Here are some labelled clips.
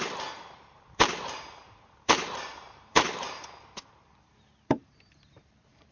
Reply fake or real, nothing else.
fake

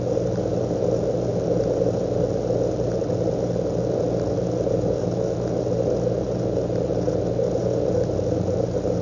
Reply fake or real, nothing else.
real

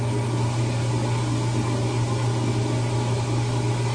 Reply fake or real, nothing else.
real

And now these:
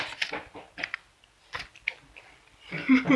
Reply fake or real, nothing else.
real